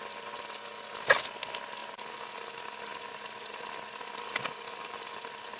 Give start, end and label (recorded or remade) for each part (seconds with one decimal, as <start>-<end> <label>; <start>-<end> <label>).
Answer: 0.0-0.7 remade; 0.7-1.8 recorded; 1.8-5.6 remade

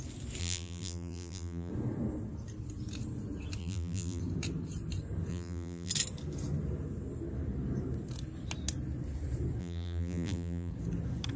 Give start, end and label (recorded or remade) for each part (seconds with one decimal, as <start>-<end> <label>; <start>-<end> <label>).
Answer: 0.0-0.4 recorded; 0.4-1.7 remade; 1.7-3.6 recorded; 3.6-4.2 remade; 4.2-5.3 recorded; 5.3-5.9 remade; 5.9-9.6 recorded; 9.6-10.7 remade; 10.7-11.4 recorded